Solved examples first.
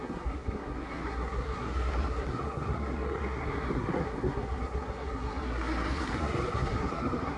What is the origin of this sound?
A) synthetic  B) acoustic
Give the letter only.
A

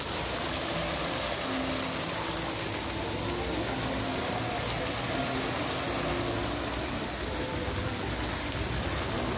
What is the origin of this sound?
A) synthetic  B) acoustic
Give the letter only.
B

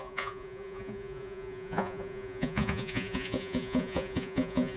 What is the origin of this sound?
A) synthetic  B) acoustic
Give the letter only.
A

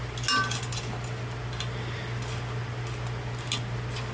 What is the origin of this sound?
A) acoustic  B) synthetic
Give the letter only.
A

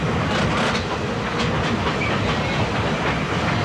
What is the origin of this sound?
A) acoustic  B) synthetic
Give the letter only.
A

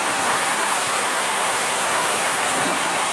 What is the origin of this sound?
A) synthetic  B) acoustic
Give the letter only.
A